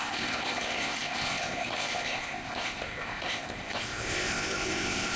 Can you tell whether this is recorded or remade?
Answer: remade